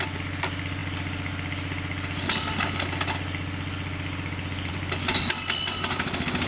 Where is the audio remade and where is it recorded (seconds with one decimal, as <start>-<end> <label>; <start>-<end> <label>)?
0.0-6.5 recorded